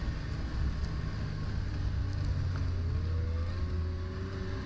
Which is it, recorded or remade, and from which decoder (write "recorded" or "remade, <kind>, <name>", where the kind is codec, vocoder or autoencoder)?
recorded